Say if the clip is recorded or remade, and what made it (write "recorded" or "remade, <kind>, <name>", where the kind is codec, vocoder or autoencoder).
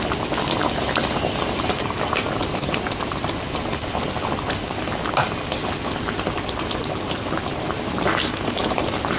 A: recorded